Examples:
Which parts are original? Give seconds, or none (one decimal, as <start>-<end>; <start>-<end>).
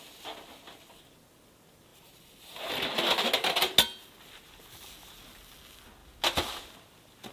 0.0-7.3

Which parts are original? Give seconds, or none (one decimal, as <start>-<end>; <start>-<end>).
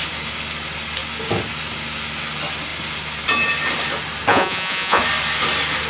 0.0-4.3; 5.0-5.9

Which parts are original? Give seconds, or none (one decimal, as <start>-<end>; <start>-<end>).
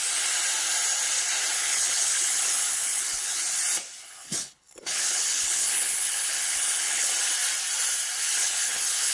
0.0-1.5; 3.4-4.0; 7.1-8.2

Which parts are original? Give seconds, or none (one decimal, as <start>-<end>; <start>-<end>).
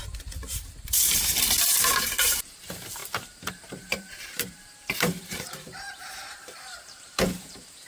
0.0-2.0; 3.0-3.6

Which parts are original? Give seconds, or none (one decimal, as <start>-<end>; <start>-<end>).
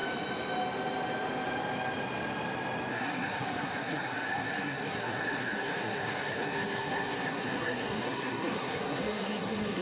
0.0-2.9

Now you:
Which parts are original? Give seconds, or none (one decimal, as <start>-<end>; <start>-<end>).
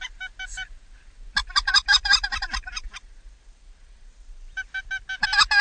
0.0-1.4; 4.8-5.6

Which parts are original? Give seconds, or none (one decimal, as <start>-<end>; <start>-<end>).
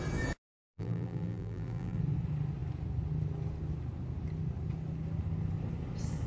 0.0-0.5; 2.0-6.3